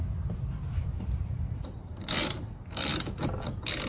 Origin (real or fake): real